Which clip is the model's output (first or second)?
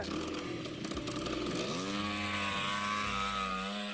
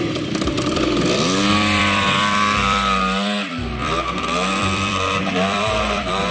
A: second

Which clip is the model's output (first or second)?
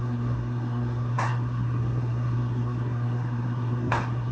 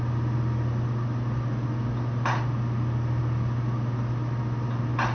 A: first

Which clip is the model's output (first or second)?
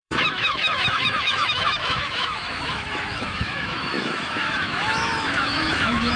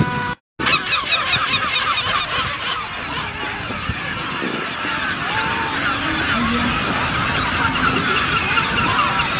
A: first